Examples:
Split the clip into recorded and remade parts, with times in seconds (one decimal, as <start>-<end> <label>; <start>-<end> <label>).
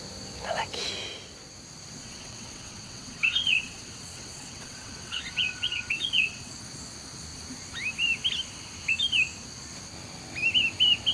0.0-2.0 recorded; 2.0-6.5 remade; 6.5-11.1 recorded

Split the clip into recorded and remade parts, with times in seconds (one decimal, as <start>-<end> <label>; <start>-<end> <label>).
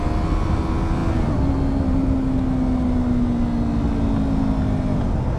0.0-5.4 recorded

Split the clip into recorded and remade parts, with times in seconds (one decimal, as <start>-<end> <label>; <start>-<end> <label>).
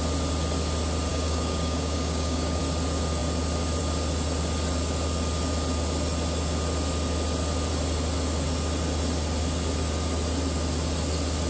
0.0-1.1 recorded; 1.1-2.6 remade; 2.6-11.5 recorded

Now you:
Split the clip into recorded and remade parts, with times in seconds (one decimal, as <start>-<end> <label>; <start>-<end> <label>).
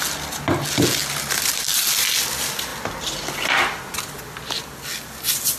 0.0-1.0 recorded; 1.0-1.8 remade; 1.8-2.7 recorded; 2.7-3.8 remade; 3.8-5.6 recorded